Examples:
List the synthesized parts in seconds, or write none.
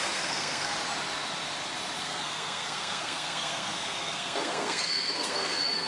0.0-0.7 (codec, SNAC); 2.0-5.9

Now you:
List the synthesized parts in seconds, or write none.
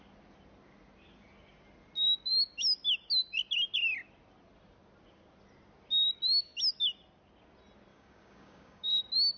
7.9-9.0 (codec, DAC)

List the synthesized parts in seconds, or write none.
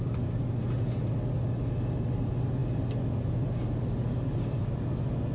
none